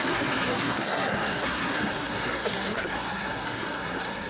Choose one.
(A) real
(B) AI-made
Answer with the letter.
B